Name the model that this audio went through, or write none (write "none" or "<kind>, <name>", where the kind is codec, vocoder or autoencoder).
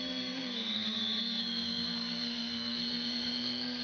codec, SNAC